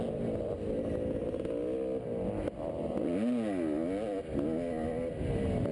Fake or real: real